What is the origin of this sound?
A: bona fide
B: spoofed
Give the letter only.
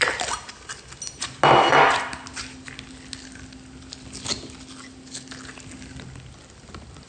A